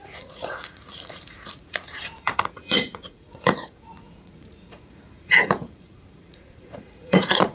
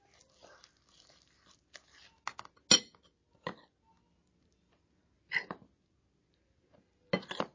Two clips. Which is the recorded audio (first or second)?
second